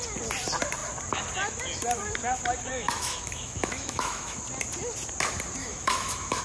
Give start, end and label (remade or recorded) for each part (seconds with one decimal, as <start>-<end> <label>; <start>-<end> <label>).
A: 0.0-2.7 recorded; 2.7-4.4 remade; 4.4-5.6 recorded; 5.6-6.4 remade